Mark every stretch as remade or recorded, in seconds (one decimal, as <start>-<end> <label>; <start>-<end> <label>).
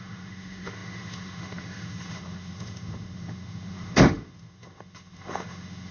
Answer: 0.0-5.9 remade